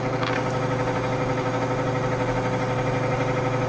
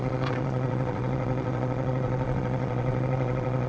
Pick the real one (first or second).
first